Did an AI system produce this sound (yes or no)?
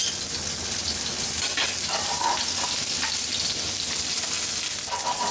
no